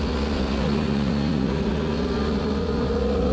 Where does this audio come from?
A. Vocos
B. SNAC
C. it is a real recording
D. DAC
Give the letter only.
A